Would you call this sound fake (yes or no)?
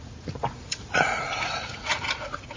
yes